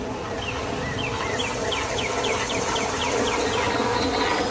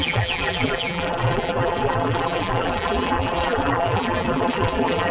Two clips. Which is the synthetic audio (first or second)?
second